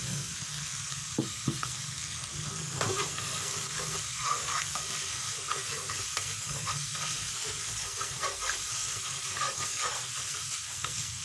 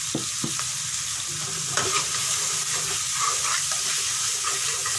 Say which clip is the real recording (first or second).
second